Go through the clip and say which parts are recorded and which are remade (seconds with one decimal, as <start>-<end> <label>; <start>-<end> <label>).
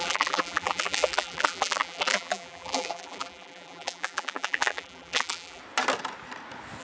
0.0-5.6 remade; 5.6-6.8 recorded